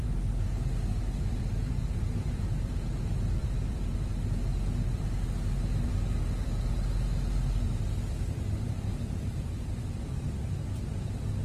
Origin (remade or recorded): remade